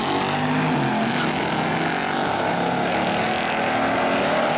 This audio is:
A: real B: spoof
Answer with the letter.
A